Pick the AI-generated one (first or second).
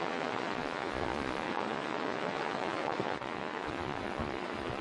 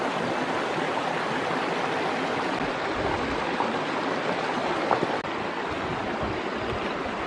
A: first